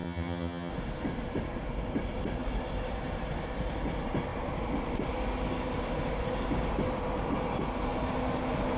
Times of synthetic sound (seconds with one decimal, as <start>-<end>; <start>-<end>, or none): 0.0-0.7